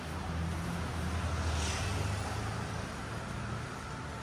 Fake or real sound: real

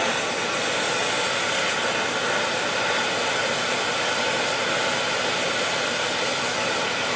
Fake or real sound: real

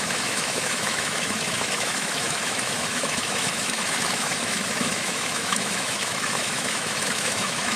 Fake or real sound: fake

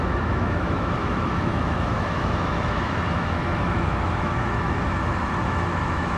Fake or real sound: fake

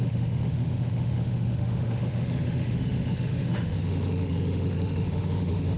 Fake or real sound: fake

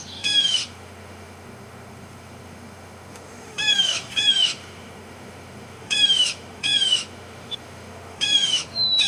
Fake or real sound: fake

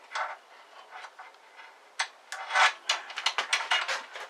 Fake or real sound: real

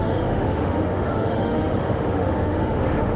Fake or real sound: fake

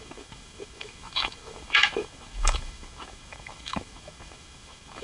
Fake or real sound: fake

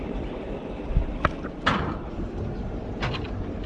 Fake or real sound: real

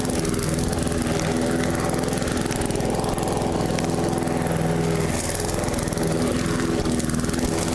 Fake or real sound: real